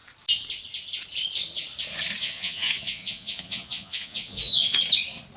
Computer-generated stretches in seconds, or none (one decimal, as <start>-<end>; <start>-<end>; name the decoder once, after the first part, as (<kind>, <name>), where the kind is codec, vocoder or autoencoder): 2.2-4.8 (vocoder, Vocos)